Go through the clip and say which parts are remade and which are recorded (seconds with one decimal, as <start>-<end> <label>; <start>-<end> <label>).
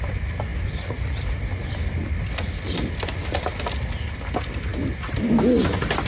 0.0-6.1 recorded